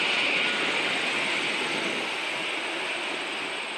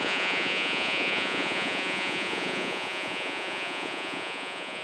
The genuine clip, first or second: first